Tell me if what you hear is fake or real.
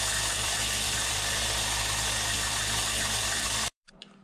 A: fake